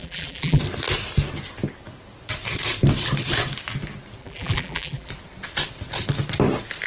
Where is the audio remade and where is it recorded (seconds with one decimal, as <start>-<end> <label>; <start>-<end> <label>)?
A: 0.0-0.6 remade; 0.6-4.2 recorded; 4.2-5.1 remade; 5.1-6.9 recorded